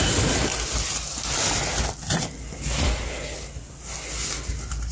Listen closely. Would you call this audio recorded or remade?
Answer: recorded